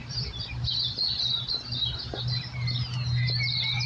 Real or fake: real